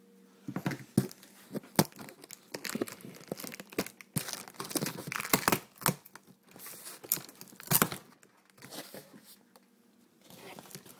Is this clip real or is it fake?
real